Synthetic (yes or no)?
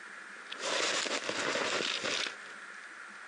no